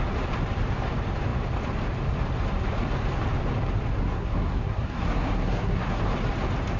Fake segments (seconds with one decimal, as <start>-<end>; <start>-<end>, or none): 4.0-6.0